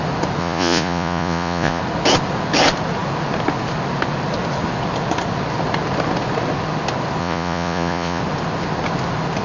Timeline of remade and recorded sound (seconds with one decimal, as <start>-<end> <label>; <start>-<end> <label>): 0.0-0.4 recorded; 0.4-1.8 remade; 1.8-7.2 recorded; 7.2-8.2 remade; 8.2-9.4 recorded